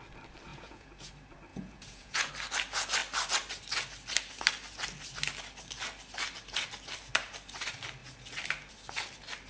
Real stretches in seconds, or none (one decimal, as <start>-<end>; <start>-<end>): 0.0-0.5; 1.1-1.5; 2.3-9.5